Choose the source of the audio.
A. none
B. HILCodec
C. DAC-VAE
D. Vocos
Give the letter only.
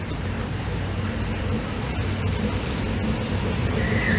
A